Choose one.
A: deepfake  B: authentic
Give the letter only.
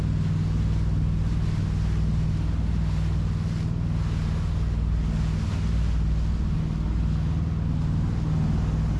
B